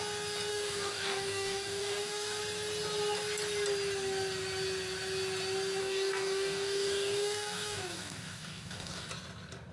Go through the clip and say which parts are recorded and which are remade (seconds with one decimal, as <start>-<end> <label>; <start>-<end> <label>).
0.0-0.5 recorded; 0.5-2.4 remade; 2.4-5.8 recorded; 5.8-9.1 remade; 9.1-9.7 recorded